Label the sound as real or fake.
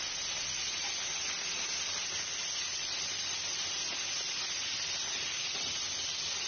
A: real